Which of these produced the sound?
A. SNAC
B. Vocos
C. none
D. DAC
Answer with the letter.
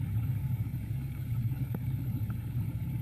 D